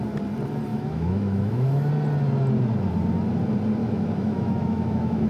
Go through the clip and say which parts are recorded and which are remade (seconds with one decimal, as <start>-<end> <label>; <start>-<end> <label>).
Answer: 0.0-0.7 recorded; 0.7-1.9 remade; 1.9-3.8 recorded; 3.8-5.3 remade